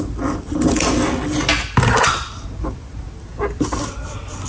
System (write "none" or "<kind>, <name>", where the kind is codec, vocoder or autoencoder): none